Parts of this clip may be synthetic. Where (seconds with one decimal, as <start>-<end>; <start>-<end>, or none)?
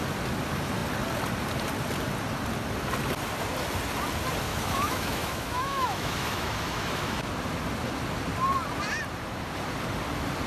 4.5-7.3